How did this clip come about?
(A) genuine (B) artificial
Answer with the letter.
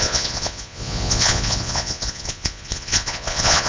B